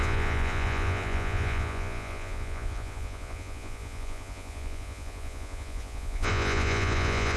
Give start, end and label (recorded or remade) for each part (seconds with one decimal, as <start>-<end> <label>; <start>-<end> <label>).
0.0-7.4 remade